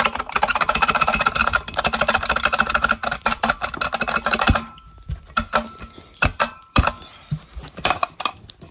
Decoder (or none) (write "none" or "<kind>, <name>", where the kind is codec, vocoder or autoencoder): none